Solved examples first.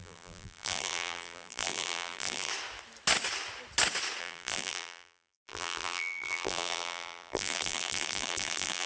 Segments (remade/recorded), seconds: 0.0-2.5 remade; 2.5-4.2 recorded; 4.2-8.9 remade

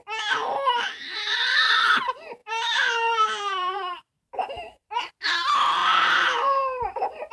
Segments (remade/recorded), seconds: 0.0-2.4 recorded; 2.4-5.1 remade; 5.1-5.8 recorded; 5.8-7.3 remade